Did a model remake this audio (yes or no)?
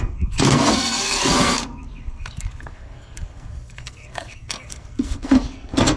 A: yes